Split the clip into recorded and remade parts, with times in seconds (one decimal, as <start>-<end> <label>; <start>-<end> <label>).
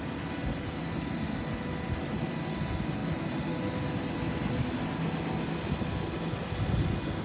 0.0-7.2 recorded